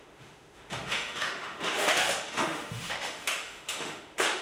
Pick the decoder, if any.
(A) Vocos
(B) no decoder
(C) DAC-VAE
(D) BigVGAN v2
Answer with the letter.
C